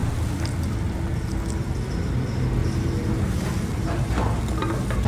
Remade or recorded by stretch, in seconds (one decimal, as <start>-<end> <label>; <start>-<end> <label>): 0.0-2.6 recorded; 2.6-4.4 remade; 4.4-5.1 recorded